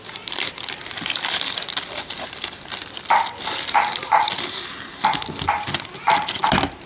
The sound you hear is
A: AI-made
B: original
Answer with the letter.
A